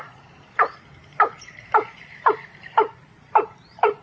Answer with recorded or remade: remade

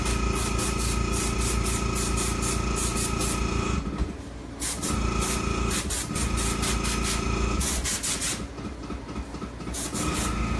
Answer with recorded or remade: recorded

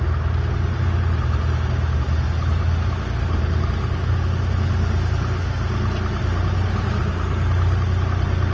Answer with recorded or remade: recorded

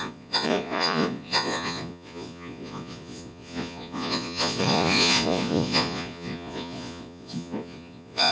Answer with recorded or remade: remade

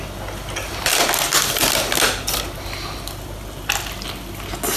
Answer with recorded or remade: recorded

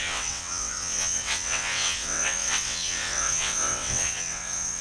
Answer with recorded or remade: remade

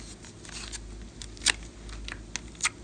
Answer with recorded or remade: recorded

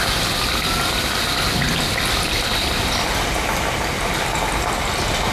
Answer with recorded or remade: recorded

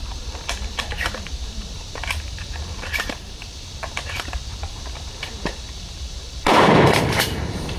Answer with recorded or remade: remade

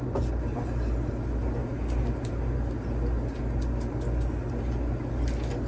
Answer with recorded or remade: recorded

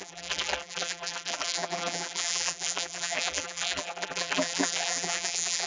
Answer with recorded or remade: remade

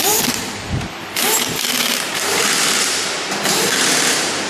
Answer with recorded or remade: remade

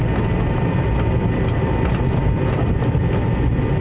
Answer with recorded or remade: recorded